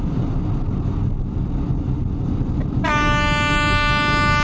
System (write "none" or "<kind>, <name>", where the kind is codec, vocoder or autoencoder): none